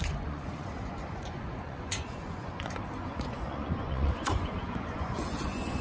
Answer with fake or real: fake